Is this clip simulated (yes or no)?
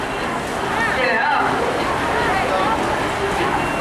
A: no